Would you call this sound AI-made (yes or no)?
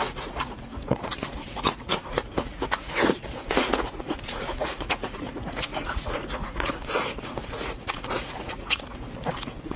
yes